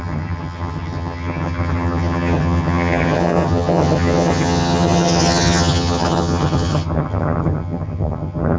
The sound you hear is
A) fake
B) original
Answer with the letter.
A